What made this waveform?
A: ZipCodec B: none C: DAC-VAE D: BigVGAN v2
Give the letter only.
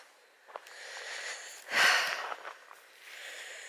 B